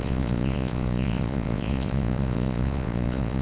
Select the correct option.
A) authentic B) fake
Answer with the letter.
B